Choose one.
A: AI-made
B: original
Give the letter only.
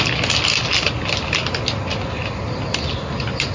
B